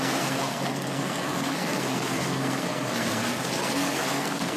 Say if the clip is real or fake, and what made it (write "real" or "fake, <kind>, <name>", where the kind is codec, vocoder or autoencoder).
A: fake, codec, SNAC